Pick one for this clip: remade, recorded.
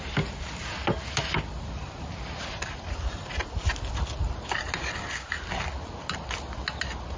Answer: recorded